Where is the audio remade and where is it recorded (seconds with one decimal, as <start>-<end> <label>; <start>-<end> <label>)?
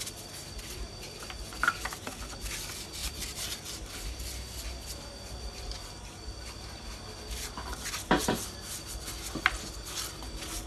0.0-3.0 recorded; 3.0-3.6 remade; 3.6-10.7 recorded